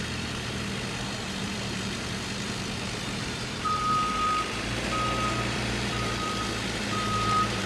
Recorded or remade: remade